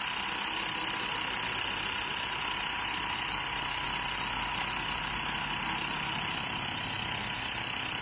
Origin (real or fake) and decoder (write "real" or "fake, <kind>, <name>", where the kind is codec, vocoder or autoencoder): real